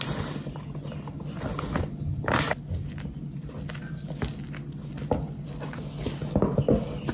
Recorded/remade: recorded